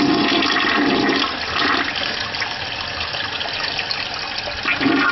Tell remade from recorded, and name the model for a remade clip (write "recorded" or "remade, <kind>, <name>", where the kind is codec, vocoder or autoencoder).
recorded